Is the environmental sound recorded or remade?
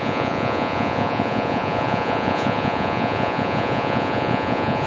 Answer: remade